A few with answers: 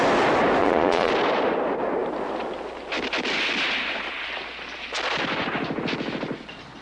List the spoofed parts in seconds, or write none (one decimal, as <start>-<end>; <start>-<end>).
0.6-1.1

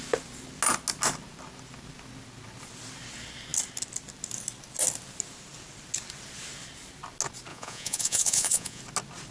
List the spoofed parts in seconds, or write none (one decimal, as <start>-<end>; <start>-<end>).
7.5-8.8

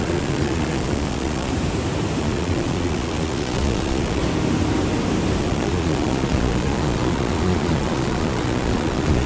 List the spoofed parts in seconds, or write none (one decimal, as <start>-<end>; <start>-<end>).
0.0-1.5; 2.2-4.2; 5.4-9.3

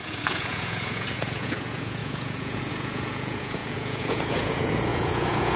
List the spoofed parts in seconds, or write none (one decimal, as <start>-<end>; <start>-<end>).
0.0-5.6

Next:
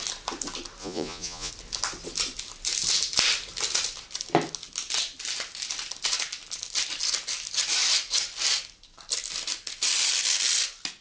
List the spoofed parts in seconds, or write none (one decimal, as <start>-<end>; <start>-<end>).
0.8-1.5

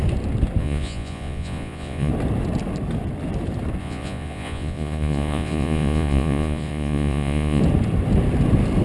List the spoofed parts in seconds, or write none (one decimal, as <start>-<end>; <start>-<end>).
0.6-2.1; 3.8-7.6